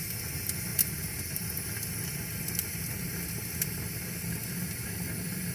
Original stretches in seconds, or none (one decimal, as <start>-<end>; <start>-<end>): 0.0-5.5